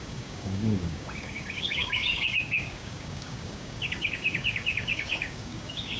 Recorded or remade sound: remade